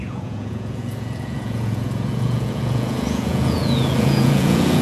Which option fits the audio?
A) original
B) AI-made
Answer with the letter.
B